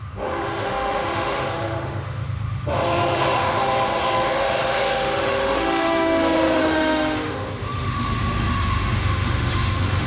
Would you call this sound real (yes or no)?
no